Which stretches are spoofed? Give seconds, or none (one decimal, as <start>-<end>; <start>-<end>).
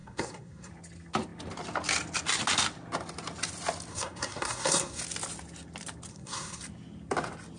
0.0-0.7; 3.9-5.0; 6.1-6.6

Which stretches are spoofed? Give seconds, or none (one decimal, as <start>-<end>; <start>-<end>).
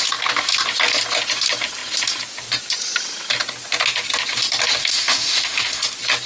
4.8-5.8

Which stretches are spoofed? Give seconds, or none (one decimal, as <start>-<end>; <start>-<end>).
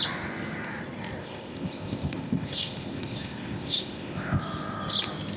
1.2-4.4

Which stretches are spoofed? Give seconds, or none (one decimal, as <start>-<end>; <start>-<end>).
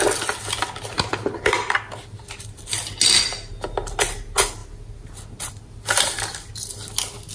none